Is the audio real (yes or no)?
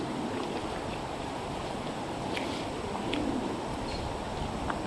no